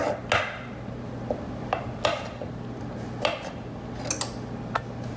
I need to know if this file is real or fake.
real